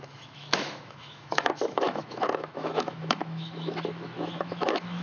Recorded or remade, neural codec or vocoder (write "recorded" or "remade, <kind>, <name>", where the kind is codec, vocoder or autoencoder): remade, autoencoder, DAC-VAE